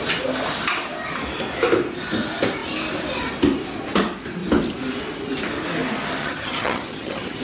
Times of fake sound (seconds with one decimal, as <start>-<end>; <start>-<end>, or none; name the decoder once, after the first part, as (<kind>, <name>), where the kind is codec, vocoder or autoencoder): 6.2-7.4 (vocoder, HiFi-GAN)